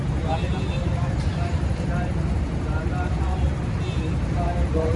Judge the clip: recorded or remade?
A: remade